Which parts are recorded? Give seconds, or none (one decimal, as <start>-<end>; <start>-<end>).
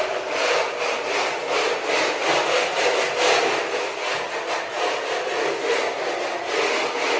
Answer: 0.0-7.2